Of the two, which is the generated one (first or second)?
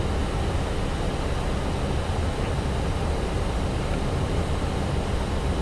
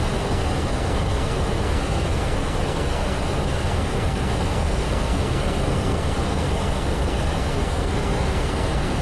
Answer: second